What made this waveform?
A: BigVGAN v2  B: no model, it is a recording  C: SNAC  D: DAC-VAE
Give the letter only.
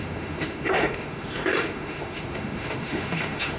D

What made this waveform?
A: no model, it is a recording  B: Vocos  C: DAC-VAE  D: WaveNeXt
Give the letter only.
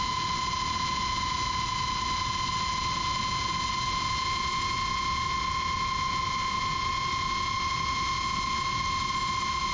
A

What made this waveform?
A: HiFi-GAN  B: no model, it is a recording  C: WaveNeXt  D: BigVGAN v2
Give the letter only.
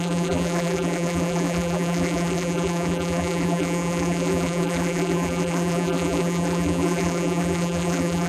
D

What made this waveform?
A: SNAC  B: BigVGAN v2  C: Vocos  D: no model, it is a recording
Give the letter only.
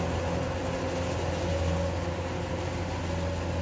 D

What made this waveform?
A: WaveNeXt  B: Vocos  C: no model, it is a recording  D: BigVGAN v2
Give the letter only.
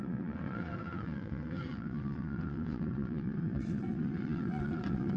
A